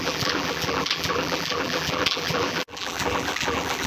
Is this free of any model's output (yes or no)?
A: no